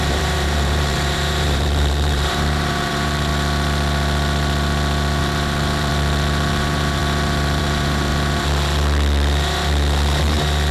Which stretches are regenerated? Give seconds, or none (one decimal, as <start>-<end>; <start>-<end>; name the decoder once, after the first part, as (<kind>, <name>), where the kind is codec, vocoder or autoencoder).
0.0-3.3 (vocoder, BigVGAN v2); 5.2-5.9; 6.5-7.0; 7.6-8.1